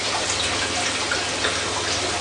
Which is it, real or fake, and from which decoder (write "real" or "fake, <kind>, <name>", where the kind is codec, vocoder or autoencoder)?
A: real